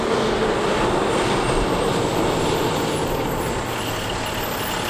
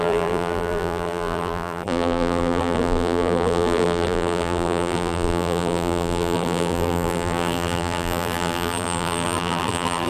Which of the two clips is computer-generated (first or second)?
second